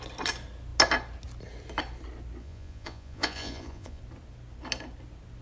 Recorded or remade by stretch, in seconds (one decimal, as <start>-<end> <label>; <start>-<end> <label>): 0.0-2.4 recorded; 2.4-4.0 remade; 4.0-5.4 recorded

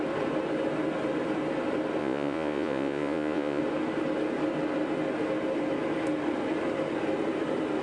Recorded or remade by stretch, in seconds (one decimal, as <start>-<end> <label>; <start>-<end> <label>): 0.0-2.0 recorded; 2.0-3.6 remade; 3.6-7.8 recorded

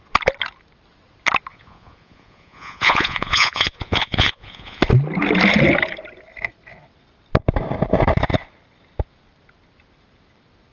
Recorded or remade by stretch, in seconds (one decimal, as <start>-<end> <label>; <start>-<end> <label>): 0.0-1.5 recorded; 1.5-4.8 remade; 4.8-10.7 recorded

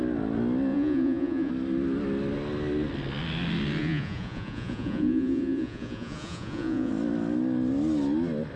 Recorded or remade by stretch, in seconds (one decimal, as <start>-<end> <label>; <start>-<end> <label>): 0.0-0.7 recorded; 0.7-1.5 remade; 1.5-3.8 recorded; 3.8-6.9 remade; 6.9-8.6 recorded

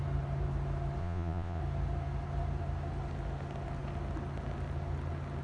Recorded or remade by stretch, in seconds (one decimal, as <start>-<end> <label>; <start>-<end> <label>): 0.0-1.0 recorded; 1.0-1.6 remade; 1.6-5.4 recorded

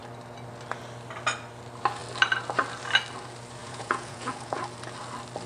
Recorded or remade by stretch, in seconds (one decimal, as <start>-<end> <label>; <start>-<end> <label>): 0.0-3.6 recorded; 3.6-4.6 remade; 4.6-5.5 recorded